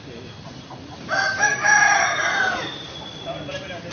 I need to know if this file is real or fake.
real